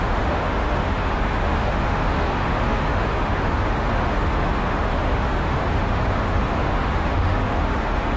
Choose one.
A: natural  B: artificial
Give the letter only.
B